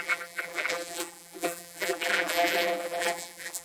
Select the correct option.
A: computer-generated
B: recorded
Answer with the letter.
A